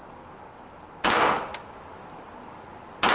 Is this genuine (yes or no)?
yes